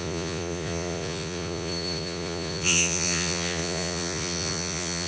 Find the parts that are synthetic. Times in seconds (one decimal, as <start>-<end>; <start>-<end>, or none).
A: 0.0-5.1